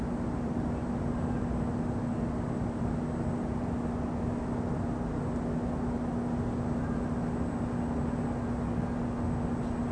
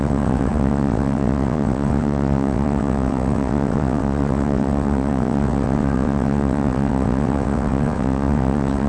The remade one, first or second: second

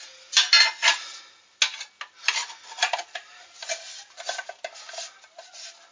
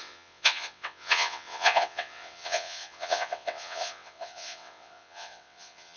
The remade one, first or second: second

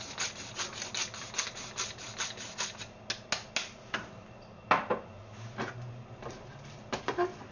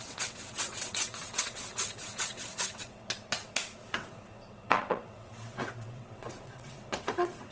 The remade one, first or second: second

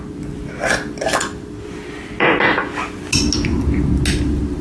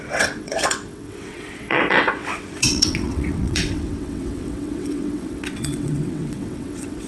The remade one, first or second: second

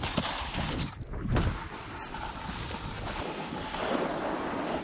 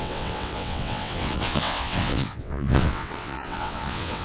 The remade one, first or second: second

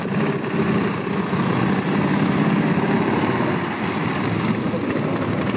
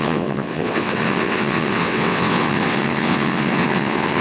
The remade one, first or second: second